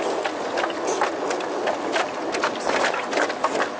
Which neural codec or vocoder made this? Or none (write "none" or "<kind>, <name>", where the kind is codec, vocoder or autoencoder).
none